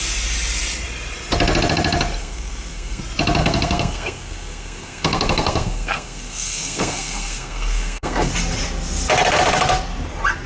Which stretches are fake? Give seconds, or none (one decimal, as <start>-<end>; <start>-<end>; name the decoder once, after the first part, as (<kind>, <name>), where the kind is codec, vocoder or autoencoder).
2.2-3.0 (codec, SNAC); 3.4-8.3